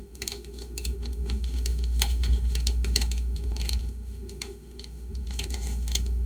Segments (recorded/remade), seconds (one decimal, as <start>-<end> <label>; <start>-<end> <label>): 0.0-6.3 remade